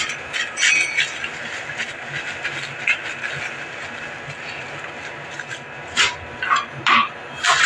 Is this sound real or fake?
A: real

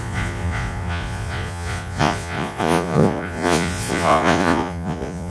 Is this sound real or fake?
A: fake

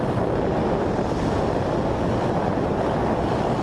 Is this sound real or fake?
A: fake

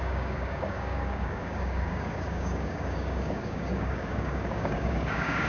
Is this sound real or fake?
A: fake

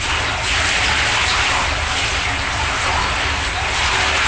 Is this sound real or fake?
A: real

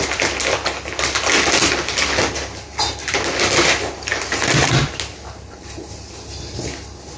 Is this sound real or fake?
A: real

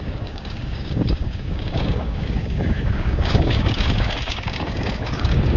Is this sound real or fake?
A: fake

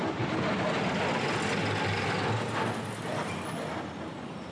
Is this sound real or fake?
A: real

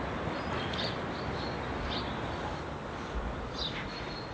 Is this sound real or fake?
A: real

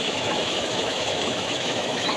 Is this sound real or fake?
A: fake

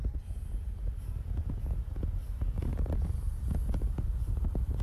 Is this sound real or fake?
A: real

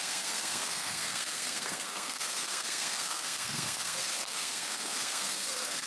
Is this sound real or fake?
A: fake